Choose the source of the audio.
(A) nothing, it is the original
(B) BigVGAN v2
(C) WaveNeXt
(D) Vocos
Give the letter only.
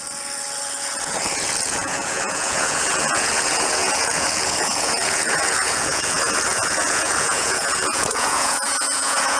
D